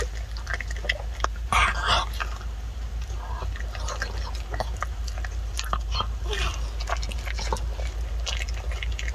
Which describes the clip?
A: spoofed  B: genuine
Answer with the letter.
B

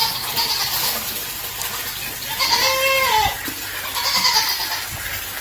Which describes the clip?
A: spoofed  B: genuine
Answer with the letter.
B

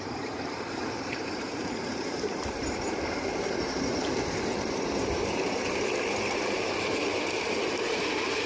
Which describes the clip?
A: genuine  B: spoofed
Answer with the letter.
B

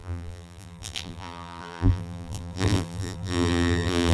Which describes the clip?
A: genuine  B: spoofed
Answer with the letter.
B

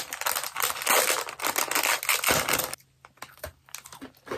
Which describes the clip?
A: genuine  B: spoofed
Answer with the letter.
A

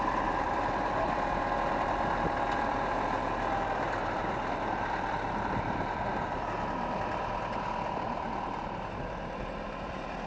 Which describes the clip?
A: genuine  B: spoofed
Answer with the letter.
B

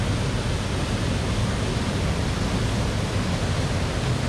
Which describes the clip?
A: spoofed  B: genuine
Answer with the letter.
B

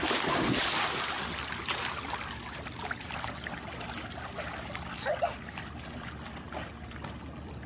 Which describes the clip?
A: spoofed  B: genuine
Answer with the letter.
B